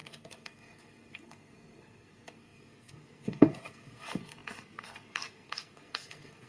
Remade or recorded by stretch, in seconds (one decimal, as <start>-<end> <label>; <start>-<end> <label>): 0.0-6.5 remade